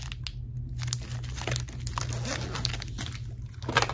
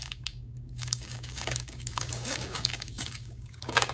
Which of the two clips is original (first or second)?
first